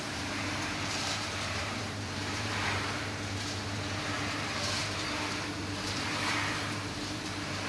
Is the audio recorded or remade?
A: remade